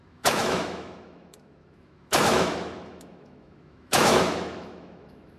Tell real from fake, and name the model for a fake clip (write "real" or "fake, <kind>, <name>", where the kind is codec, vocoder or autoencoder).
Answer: fake, autoencoder, DAC-VAE